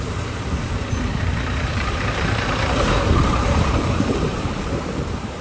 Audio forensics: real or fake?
fake